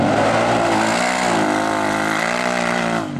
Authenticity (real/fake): real